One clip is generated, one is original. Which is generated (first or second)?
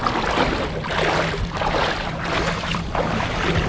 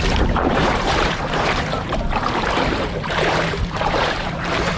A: second